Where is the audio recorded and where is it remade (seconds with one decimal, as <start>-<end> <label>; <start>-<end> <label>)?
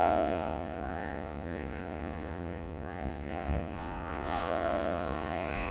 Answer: 0.0-5.7 remade